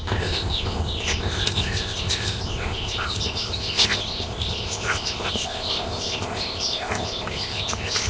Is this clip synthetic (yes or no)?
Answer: yes